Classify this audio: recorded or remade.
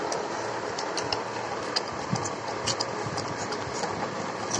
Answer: recorded